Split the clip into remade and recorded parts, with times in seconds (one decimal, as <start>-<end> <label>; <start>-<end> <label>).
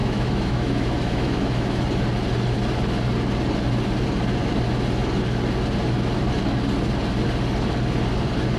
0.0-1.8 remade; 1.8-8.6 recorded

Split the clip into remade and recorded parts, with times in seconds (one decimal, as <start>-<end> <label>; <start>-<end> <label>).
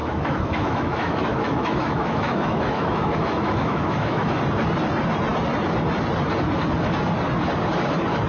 0.0-4.4 remade; 4.4-8.3 recorded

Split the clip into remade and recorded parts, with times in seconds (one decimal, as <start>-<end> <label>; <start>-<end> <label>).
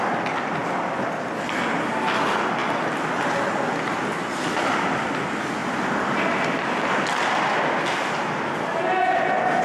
0.0-9.6 recorded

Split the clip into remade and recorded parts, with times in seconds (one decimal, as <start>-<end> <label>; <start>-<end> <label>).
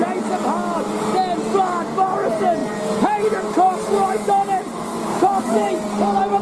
0.0-4.9 recorded; 4.9-5.8 remade; 5.8-6.4 recorded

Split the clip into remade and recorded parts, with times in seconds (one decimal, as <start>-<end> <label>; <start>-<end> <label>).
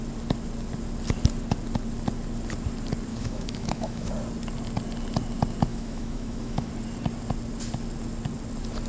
0.0-3.1 recorded; 3.1-4.1 remade; 4.1-5.7 recorded; 5.7-6.7 remade; 6.7-8.9 recorded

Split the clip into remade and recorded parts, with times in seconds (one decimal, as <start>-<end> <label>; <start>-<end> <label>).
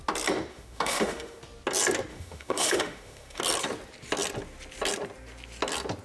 0.0-0.5 recorded; 0.5-1.4 remade; 1.4-2.1 recorded; 2.1-3.4 remade; 3.4-6.0 recorded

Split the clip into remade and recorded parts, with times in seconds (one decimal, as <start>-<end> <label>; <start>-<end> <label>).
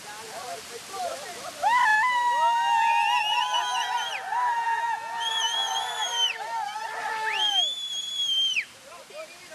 0.0-9.5 recorded